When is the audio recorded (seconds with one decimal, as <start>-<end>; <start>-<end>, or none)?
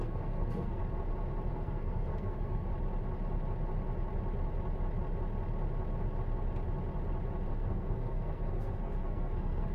0.8-1.5; 2.7-7.5